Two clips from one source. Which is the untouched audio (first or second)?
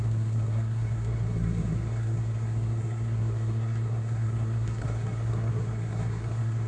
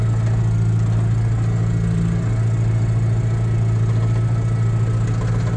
second